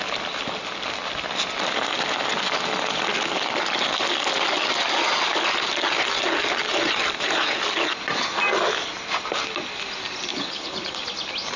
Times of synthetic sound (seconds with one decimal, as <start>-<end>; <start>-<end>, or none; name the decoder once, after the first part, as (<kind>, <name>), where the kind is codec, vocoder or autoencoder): 10.3-11.0 (codec, HILCodec)